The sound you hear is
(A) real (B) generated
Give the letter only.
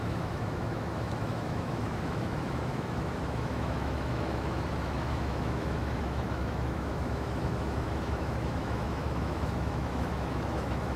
B